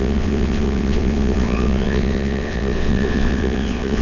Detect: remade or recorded remade